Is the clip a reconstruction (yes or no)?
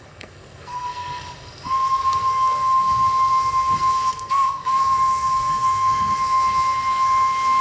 yes